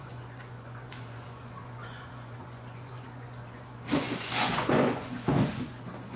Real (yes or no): no